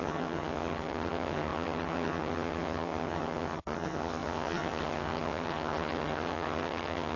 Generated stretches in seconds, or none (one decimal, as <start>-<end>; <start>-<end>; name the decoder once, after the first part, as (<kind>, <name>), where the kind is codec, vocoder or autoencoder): 0.0-7.2 (vocoder, HiFi-GAN)